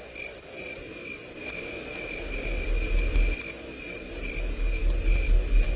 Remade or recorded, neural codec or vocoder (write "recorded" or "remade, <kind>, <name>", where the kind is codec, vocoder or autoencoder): recorded